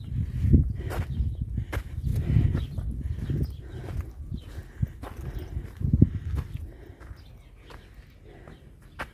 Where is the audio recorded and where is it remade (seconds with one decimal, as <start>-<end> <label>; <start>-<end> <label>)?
0.0-0.6 recorded; 0.6-1.6 remade; 1.6-9.1 recorded